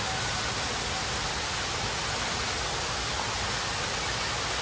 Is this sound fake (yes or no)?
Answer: no